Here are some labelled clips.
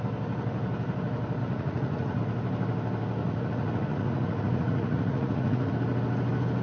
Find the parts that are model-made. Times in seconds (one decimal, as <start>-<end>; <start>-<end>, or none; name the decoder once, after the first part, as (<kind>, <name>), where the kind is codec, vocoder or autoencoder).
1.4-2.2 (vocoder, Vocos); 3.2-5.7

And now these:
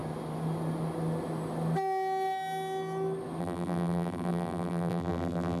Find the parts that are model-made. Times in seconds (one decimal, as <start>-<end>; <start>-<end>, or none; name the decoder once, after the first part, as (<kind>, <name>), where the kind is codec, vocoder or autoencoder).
3.4-5.6 (vocoder, BigVGAN v2)

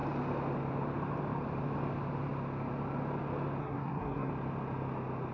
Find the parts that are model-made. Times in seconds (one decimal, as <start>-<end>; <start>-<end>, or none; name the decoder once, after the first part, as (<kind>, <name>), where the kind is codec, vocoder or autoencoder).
3.6-4.3 (codec, SNAC)